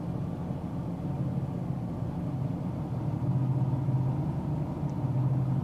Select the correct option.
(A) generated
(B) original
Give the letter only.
B